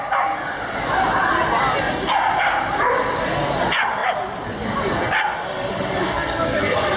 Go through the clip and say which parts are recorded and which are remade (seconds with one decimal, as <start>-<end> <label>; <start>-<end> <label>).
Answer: 0.0-6.0 recorded; 6.0-7.0 remade